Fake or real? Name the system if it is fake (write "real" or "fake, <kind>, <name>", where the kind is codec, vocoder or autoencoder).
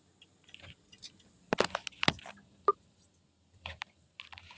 real